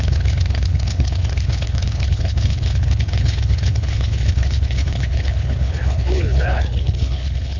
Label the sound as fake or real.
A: fake